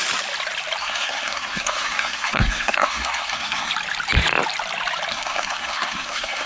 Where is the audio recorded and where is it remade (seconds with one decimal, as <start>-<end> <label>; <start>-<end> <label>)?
0.0-0.8 recorded; 0.8-3.7 remade; 3.7-5.1 recorded; 5.1-6.5 remade